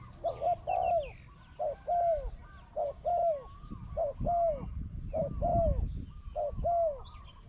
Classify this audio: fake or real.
real